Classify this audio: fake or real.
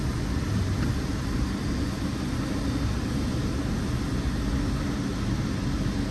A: real